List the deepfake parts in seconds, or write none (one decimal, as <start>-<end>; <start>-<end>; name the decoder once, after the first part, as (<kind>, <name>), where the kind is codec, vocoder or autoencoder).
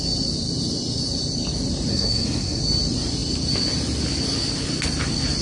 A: 1.9-2.6 (codec, SNAC)